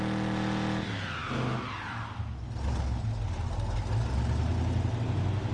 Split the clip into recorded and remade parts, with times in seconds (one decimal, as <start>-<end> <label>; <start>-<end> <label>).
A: 0.0-5.5 recorded